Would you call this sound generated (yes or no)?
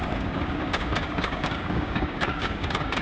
yes